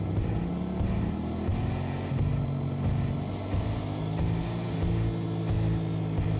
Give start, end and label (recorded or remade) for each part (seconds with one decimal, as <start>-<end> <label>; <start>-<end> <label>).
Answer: 0.0-6.4 recorded